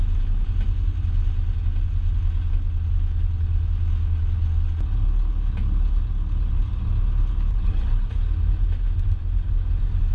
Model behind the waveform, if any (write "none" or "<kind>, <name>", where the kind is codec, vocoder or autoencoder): none